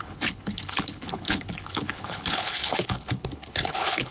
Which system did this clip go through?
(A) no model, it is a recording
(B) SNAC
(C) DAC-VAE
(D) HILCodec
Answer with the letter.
D